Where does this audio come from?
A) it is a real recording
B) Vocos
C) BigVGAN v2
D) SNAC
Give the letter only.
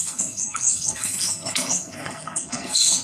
D